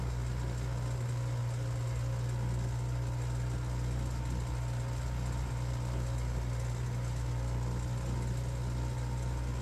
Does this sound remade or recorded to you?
recorded